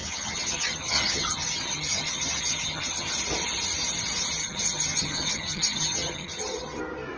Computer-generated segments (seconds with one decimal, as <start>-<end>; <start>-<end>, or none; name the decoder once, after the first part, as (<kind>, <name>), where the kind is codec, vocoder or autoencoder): 0.0-3.1 (vocoder, HiFi-GAN); 4.4-6.8